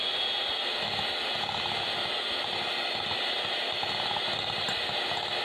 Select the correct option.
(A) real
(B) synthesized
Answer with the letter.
A